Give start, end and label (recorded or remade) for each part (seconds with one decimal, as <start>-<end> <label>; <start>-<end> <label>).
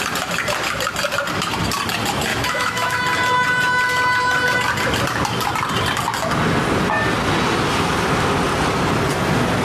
0.0-2.3 recorded; 2.3-2.9 remade; 2.9-9.6 recorded